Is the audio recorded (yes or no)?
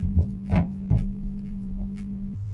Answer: no